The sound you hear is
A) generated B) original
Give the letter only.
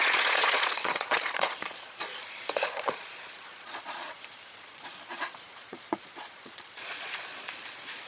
A